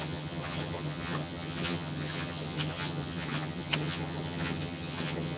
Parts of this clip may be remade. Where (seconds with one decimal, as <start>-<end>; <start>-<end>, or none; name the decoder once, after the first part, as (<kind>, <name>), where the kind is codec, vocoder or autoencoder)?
0.0-5.4 (vocoder, HiFi-GAN)